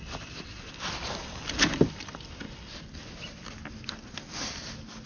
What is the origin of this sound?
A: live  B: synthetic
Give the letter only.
A